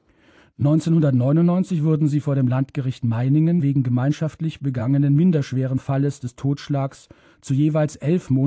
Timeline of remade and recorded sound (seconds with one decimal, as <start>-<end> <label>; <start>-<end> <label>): 0.0-8.5 recorded